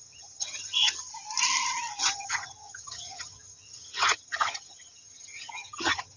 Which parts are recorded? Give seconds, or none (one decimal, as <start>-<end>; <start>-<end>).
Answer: 1.1-2.0